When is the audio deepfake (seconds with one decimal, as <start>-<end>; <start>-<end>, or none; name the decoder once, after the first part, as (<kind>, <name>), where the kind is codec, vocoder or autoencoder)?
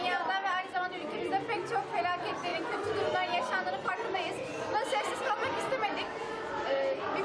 none